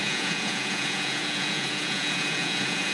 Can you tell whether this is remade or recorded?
remade